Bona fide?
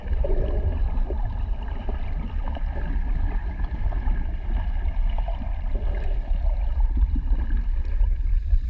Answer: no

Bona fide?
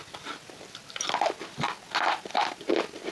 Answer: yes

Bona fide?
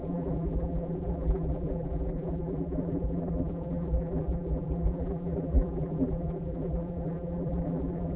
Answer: no